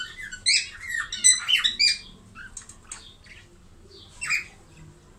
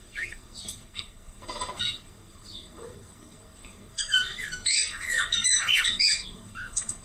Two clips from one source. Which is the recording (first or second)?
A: first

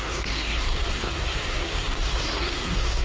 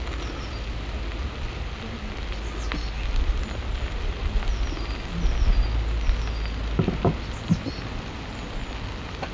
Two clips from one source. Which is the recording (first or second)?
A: second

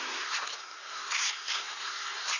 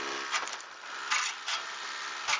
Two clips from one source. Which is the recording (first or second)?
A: second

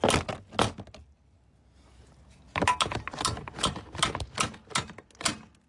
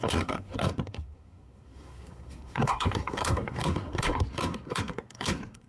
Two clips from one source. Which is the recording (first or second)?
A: first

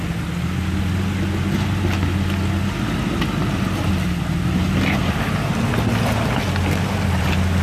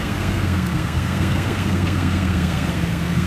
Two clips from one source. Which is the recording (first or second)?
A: first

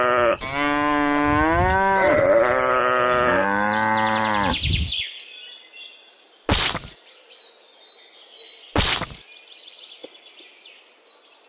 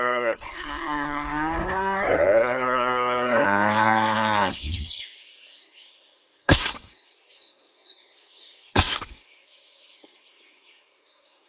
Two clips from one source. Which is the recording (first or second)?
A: first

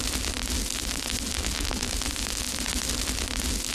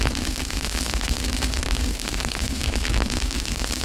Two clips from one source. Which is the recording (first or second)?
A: first